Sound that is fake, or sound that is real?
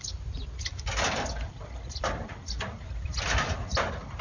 real